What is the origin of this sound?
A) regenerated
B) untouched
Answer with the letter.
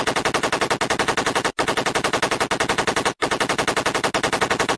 B